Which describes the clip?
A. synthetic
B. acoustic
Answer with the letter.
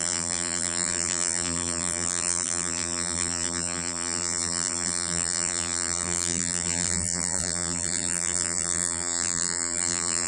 A